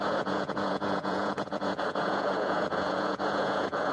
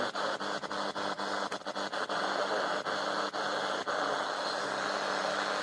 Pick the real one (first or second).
second